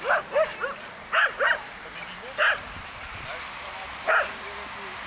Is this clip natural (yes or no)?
yes